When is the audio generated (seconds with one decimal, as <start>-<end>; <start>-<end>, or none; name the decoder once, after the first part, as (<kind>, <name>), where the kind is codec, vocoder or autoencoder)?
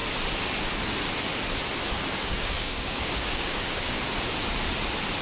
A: 2.2-4.0 (codec, DAC)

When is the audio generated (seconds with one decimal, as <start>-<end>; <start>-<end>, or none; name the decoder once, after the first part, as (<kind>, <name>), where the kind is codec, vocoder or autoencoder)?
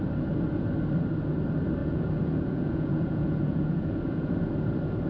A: 1.8-4.3 (vocoder, Vocos)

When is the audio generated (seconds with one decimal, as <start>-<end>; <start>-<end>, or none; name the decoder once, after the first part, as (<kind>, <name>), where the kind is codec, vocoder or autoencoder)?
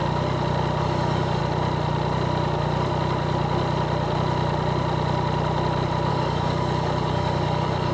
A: 0.8-1.4 (codec, DAC); 6.1-7.9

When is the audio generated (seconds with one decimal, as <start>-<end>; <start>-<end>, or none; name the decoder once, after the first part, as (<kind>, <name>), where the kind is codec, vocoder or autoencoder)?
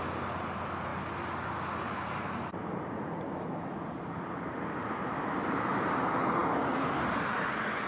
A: none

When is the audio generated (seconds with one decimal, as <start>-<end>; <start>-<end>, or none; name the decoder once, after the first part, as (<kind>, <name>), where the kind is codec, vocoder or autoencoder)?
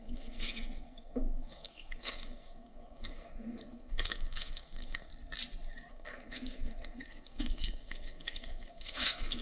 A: 0.0-5.1 (codec, SNAC); 5.9-9.4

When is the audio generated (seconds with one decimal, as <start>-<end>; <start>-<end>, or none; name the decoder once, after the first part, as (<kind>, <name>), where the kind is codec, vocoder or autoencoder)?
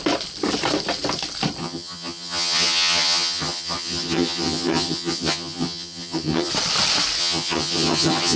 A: 1.6-6.5 (vocoder, HiFi-GAN); 7.2-8.4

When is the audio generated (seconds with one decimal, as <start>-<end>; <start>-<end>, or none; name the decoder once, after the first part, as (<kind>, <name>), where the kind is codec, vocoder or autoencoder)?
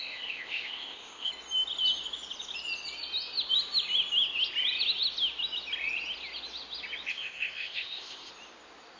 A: 0.0-1.3 (codec, ZipCodec); 7.1-8.3